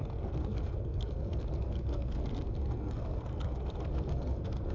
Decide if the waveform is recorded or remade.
remade